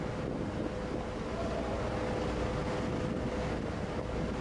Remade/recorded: recorded